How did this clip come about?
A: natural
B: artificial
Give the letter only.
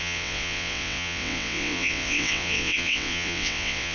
B